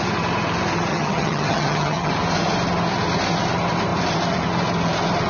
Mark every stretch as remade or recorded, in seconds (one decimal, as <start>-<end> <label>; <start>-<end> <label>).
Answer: 0.0-0.9 recorded; 0.9-2.1 remade; 2.1-5.3 recorded